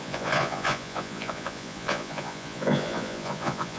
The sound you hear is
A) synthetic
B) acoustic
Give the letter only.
A